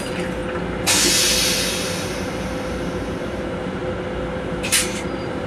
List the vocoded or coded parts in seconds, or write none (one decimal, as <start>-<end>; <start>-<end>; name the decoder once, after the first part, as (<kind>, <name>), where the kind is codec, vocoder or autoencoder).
0.0-0.4 (vocoder, BigVGAN v2); 2.4-3.8; 4.5-5.5